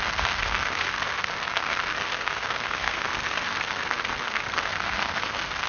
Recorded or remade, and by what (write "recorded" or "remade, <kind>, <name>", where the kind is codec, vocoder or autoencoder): remade, codec, SNAC